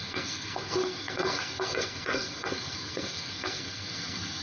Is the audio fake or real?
fake